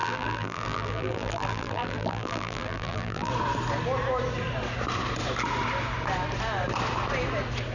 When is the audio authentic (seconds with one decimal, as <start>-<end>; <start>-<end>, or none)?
3.3-7.7